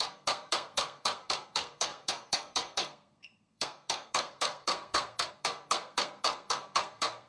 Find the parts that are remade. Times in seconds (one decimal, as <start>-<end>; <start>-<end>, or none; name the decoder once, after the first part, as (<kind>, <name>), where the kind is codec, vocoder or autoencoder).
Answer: 0.0-7.3 (codec, SNAC)